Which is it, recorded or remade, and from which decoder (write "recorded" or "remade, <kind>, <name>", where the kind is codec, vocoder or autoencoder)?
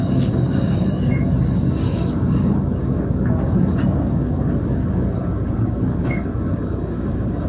remade, codec, DAC